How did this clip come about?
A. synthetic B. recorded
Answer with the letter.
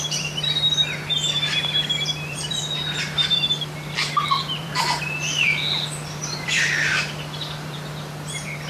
A